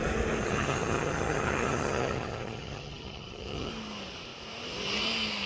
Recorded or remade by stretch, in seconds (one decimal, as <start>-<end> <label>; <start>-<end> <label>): 0.0-0.4 recorded; 0.4-3.7 remade; 3.7-5.5 recorded